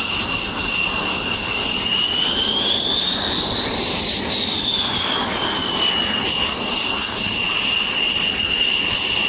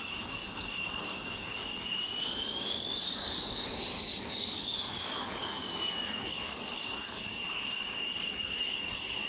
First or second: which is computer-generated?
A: second